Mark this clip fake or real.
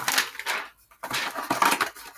real